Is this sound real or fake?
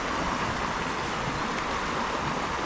real